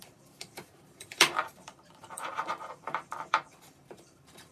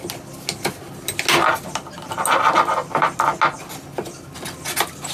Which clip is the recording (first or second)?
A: second